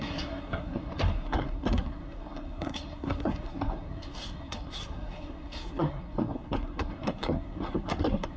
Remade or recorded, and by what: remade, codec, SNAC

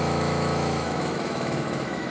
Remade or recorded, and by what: remade, autoencoder, DAC-VAE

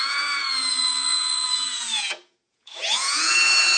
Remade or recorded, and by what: remade, vocoder, Vocos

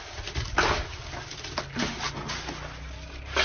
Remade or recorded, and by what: recorded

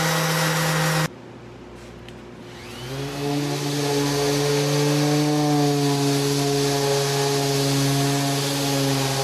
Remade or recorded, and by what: recorded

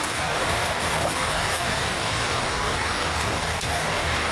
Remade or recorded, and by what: remade, codec, DAC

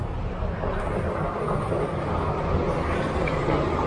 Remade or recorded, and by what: recorded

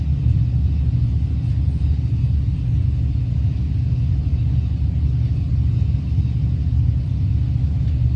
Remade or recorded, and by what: recorded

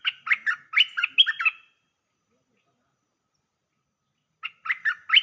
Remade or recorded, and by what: recorded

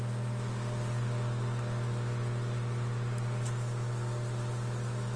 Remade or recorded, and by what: recorded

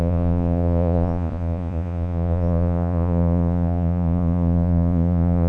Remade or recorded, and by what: remade, vocoder, Vocos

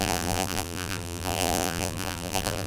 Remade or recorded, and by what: remade, vocoder, BigVGAN v2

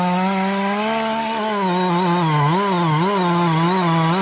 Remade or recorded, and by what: recorded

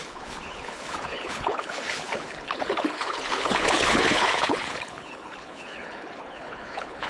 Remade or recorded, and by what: remade, codec, HILCodec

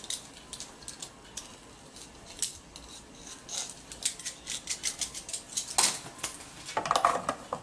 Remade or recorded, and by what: recorded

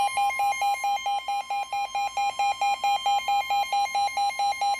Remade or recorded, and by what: recorded